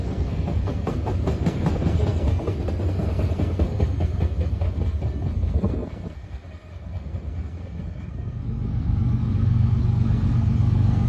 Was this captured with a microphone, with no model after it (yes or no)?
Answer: no